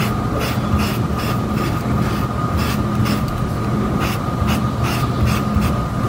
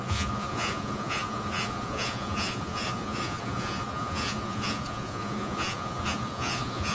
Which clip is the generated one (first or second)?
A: second